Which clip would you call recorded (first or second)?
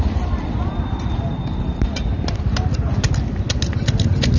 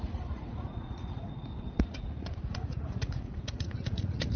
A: first